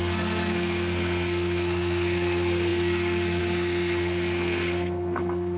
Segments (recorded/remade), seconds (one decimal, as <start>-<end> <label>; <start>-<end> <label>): 0.0-5.6 remade